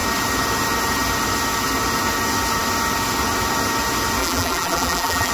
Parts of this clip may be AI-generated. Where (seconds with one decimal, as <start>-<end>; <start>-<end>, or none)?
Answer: 4.2-5.3